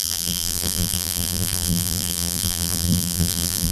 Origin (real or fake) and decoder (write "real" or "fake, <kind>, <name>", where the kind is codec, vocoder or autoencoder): fake, vocoder, BigVGAN v2